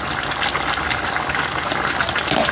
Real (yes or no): yes